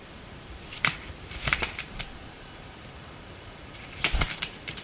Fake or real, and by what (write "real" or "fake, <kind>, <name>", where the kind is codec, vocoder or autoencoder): fake, vocoder, BigVGAN v2